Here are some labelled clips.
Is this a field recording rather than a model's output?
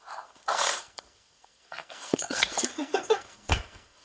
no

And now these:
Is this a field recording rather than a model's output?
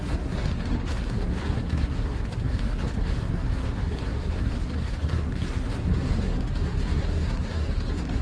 no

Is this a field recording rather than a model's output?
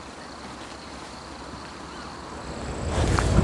yes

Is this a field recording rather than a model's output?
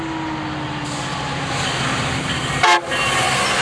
yes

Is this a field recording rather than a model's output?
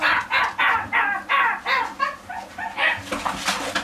yes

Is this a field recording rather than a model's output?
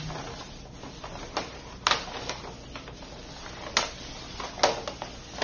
yes